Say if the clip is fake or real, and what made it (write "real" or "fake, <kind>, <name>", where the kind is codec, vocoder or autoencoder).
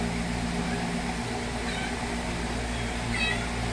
real